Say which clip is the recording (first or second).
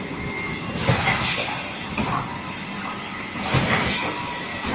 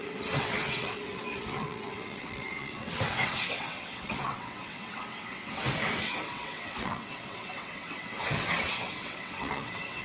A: first